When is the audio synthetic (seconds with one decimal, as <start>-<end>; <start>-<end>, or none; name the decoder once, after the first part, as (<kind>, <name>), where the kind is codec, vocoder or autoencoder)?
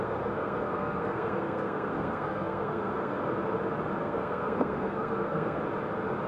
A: 0.0-3.2 (codec, SNAC); 4.0-5.6